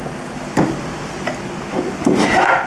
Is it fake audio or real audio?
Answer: real